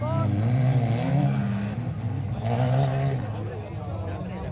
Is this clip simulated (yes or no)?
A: no